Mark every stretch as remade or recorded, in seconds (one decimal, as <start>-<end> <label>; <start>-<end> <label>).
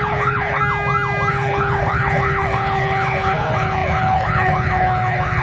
0.0-0.6 remade; 0.6-1.3 recorded; 1.3-5.4 remade